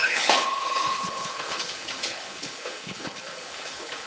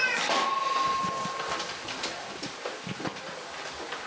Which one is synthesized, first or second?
first